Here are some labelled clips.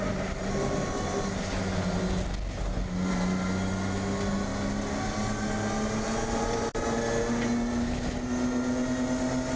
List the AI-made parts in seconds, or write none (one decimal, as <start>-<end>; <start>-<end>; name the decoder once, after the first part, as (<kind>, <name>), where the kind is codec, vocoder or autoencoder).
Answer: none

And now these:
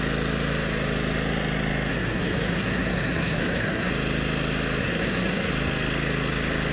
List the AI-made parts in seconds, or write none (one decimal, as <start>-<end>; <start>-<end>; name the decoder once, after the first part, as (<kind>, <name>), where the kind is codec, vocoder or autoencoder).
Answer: 1.9-3.9 (codec, SNAC); 4.8-5.5

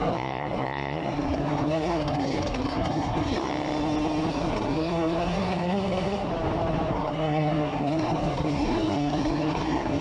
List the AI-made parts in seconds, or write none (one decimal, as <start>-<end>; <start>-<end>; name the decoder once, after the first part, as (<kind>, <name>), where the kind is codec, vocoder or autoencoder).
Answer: 0.0-3.5 (codec, SNAC); 4.3-6.3; 6.9-10.0

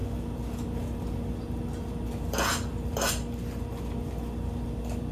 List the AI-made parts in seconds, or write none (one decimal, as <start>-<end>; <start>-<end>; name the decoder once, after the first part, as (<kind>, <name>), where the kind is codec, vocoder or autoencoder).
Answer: none

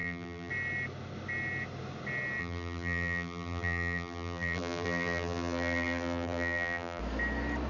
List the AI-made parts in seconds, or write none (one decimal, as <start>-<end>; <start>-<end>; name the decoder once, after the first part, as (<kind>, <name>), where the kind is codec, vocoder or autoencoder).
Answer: 0.0-0.5 (vocoder, BigVGAN v2); 2.4-7.0